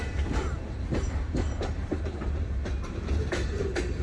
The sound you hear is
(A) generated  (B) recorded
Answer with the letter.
A